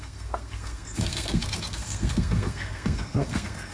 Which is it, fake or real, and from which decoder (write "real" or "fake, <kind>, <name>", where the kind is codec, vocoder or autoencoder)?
fake, codec, SNAC